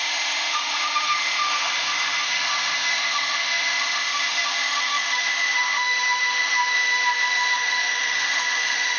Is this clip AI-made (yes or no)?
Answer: yes